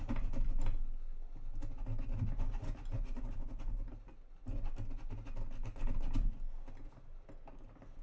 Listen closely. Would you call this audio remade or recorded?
recorded